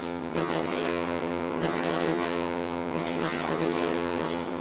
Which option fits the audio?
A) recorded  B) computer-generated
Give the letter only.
B